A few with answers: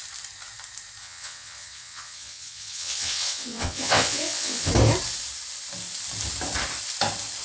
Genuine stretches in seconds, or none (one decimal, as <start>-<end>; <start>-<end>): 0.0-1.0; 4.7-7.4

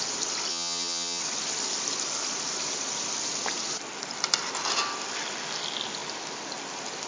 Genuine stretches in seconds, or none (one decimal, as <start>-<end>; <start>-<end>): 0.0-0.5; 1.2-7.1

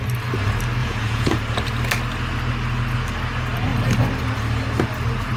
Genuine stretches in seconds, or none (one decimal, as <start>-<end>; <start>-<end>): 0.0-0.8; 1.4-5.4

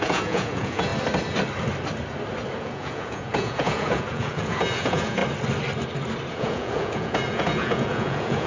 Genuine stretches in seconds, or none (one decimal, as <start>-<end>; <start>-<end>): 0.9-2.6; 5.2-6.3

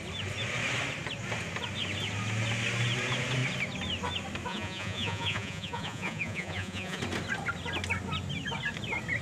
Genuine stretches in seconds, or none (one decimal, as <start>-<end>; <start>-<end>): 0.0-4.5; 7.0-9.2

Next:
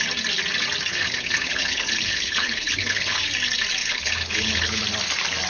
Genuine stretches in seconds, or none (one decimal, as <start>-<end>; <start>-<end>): 0.0-0.9; 3.2-3.8; 4.8-5.5